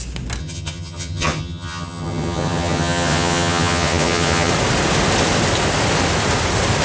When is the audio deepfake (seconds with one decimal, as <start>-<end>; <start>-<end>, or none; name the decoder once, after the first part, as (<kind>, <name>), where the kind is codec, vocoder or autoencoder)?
0.4-4.5 (vocoder, HiFi-GAN)